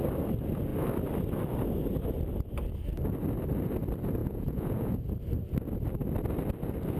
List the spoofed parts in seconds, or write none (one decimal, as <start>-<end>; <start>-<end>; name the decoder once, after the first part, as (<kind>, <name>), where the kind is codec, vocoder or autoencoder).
4.2-5.1 (vocoder, Vocos)